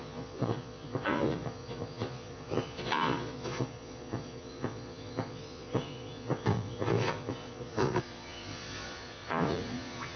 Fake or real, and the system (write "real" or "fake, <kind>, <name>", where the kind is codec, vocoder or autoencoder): fake, vocoder, Vocos